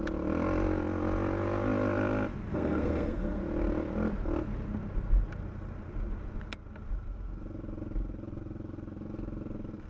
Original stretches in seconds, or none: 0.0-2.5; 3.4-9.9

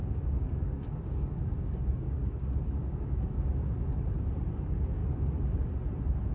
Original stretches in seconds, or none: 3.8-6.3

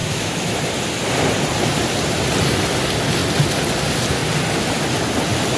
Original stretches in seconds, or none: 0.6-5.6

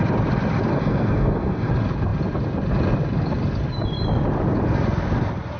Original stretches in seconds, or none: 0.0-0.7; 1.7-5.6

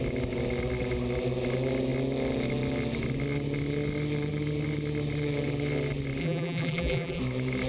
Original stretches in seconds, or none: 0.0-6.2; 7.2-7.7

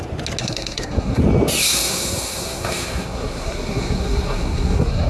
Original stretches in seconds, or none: 0.0-0.4; 1.2-1.6